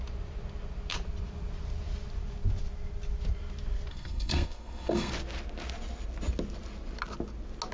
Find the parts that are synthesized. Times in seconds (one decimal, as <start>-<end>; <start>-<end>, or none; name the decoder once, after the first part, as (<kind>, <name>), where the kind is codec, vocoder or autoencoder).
3.9-5.1 (codec, SNAC)